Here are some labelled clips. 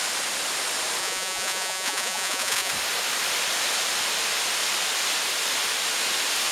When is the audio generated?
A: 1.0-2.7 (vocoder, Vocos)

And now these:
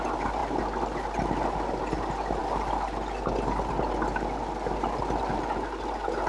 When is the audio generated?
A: none

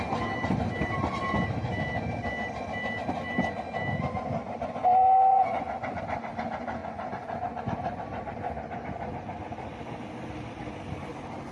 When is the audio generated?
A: 5.3-6.0 (vocoder, Vocos); 6.8-7.6